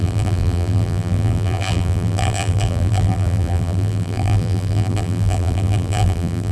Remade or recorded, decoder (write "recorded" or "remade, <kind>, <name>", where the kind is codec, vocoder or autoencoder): remade, vocoder, BigVGAN v2